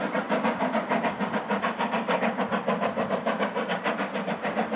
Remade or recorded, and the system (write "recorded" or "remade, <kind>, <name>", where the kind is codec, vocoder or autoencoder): recorded